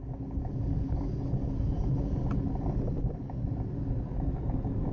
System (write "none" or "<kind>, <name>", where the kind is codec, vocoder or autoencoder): none